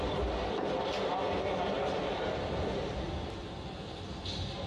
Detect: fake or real real